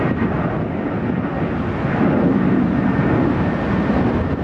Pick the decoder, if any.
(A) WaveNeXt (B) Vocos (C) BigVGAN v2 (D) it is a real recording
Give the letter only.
D